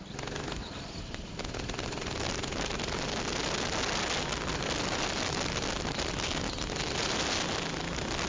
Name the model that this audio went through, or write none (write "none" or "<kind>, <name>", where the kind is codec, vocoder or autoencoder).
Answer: none